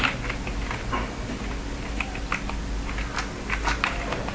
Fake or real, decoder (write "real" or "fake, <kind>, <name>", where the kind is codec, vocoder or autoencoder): real